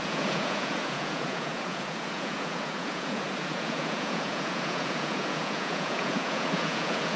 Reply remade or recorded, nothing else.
remade